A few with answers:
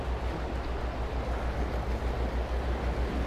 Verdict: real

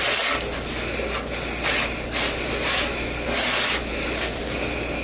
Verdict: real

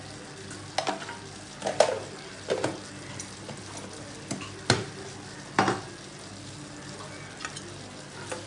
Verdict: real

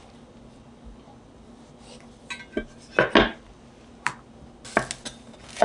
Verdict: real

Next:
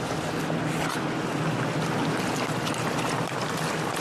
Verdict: real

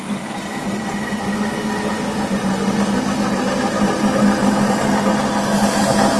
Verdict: real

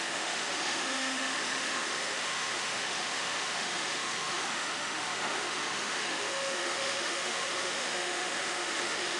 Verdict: fake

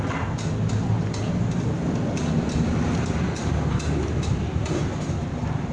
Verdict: real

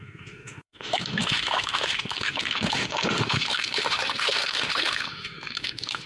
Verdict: fake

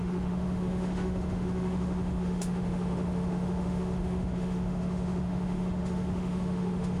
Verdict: fake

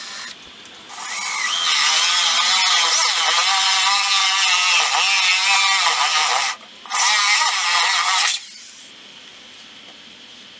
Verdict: real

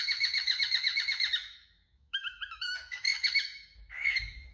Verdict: fake